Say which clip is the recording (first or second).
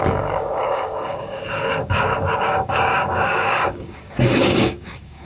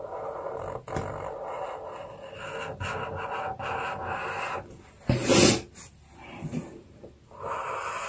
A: second